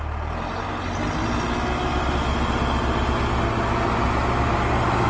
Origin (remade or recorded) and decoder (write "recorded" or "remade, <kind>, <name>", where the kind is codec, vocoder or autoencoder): recorded